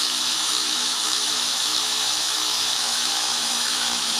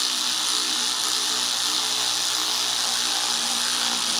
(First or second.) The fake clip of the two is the first